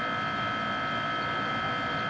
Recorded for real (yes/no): yes